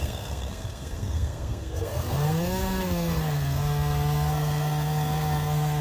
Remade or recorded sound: remade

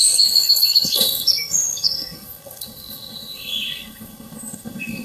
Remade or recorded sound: remade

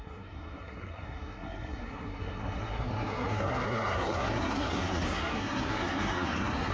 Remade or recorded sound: remade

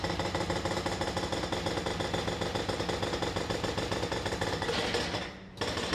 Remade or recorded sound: recorded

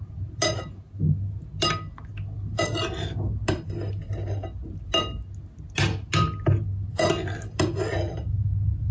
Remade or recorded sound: recorded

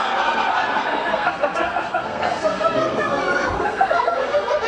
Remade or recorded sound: remade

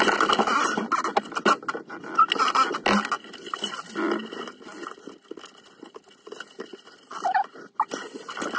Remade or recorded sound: recorded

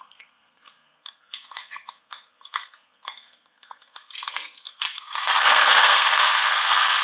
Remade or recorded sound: remade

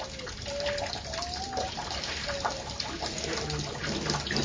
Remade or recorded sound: recorded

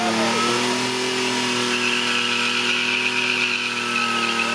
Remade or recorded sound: recorded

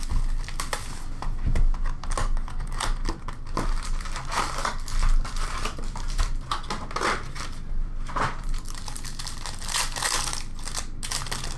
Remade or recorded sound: recorded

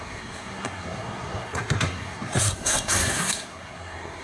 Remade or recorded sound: remade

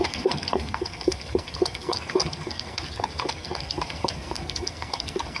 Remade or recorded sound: remade